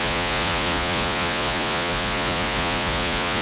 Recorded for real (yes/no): no